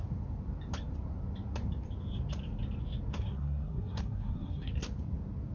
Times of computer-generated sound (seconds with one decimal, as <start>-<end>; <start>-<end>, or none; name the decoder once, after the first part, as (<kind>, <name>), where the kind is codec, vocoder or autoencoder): 3.1-4.7 (codec, SNAC)